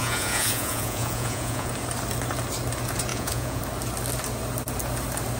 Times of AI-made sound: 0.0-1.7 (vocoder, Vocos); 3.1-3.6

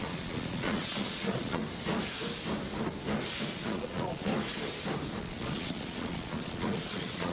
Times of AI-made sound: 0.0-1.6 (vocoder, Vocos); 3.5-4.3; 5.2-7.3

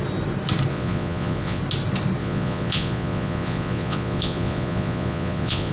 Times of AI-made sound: 0.7-1.6 (vocoder, Vocos); 2.2-5.7

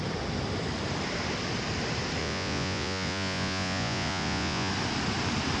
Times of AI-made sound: 2.2-4.7 (vocoder, Vocos)

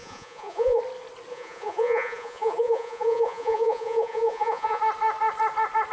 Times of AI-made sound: 0.0-0.8 (vocoder, Vocos); 1.3-4.8

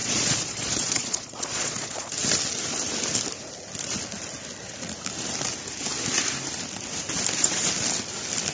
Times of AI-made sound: 0.0-2.1 (vocoder, Vocos)

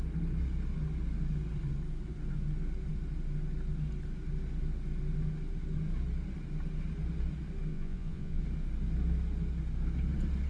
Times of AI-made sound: 7.7-8.4 (vocoder, Vocos)

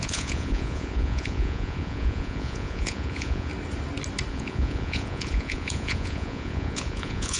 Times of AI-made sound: 0.0-3.5 (vocoder, Vocos); 4.3-7.4